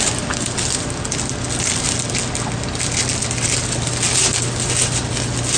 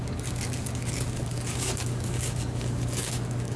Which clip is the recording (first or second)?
first